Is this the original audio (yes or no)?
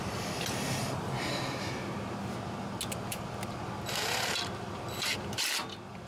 yes